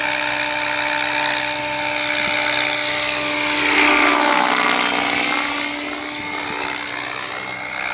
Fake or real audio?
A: real